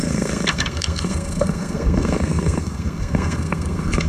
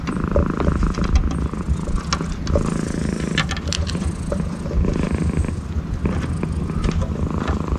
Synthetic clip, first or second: first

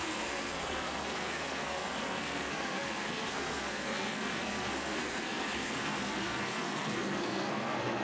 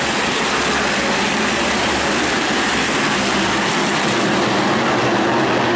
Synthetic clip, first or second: first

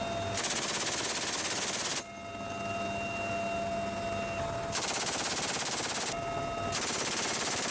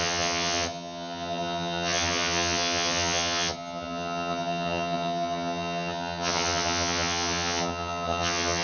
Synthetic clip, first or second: second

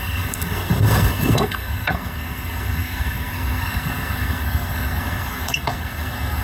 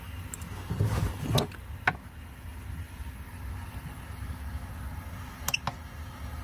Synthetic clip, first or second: first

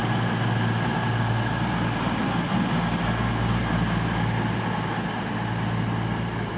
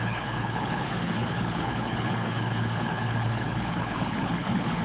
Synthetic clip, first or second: second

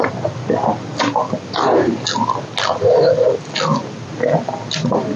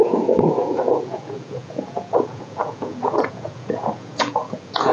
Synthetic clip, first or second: second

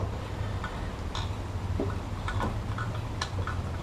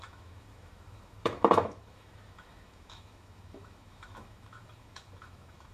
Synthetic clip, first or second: second